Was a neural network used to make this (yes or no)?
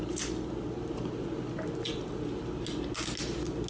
no